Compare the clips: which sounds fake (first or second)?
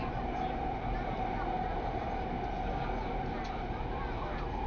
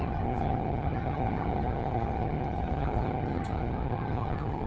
second